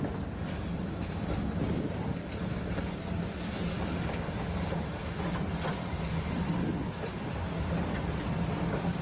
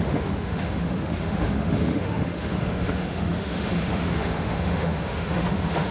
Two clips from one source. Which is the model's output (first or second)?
second